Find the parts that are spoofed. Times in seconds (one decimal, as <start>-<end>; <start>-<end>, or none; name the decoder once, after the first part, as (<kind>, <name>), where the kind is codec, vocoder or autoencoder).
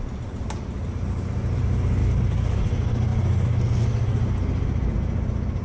2.0-2.6 (codec, DAC)